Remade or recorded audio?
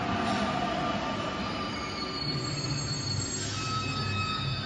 recorded